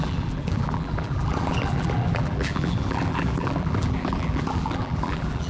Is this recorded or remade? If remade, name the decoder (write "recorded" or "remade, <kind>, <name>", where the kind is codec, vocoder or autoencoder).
remade, vocoder, BigVGAN v2